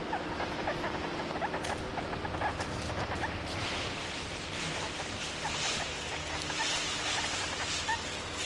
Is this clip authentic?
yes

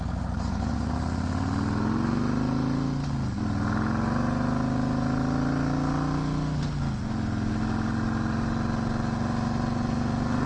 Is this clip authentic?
yes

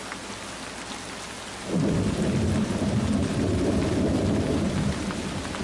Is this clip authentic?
yes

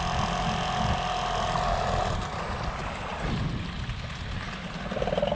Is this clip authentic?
yes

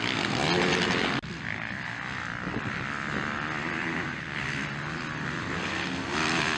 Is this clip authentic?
yes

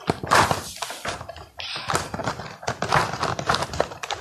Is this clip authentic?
yes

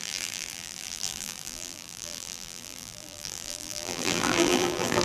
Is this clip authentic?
no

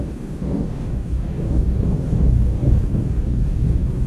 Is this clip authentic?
no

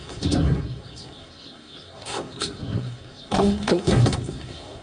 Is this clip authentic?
no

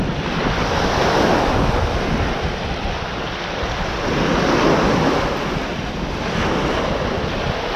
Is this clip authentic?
yes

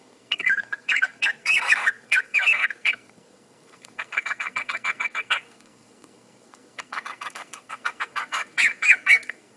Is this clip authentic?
no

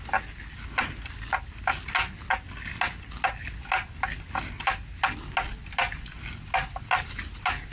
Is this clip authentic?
yes